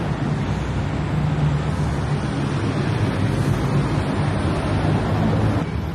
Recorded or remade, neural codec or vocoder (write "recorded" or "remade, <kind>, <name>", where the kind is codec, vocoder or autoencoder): recorded